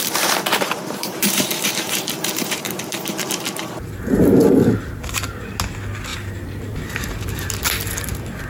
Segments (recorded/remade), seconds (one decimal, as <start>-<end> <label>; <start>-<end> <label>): 0.0-4.4 remade; 4.4-6.1 recorded; 6.1-7.5 remade; 7.5-8.5 recorded

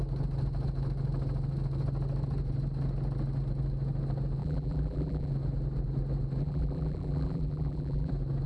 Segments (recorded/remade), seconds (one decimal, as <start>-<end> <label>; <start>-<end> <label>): 0.0-4.4 recorded; 4.4-5.3 remade; 5.3-6.4 recorded; 6.4-8.1 remade; 8.1-8.5 recorded

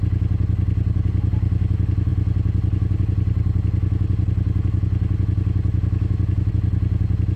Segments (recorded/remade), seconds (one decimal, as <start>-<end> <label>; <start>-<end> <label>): 0.0-7.4 recorded

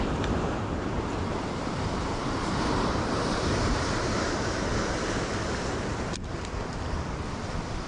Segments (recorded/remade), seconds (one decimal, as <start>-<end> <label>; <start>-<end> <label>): 0.0-4.7 remade; 4.7-7.9 recorded

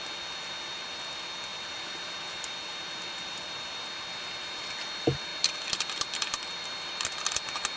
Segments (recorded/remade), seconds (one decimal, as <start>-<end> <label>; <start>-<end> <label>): 0.0-1.5 recorded; 1.5-2.5 remade; 2.5-7.8 recorded

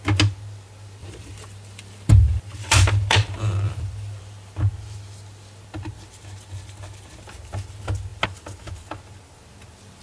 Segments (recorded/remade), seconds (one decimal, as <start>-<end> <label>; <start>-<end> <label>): 0.0-1.0 recorded; 1.0-4.2 remade; 4.2-10.0 recorded

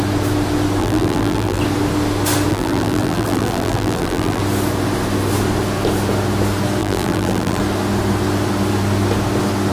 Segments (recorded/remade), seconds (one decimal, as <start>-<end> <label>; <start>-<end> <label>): 0.0-0.8 recorded; 0.8-1.6 remade; 1.6-2.5 recorded; 2.5-4.4 remade; 4.4-6.8 recorded; 6.8-7.6 remade; 7.6-9.7 recorded